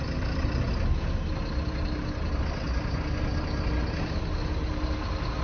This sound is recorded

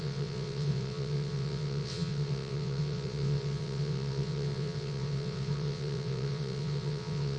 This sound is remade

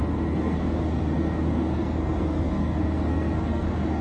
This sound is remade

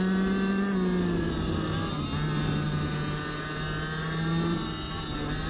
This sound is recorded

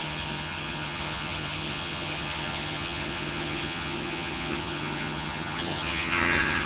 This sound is remade